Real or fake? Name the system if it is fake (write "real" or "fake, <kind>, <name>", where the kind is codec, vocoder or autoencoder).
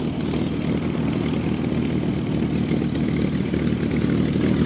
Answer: real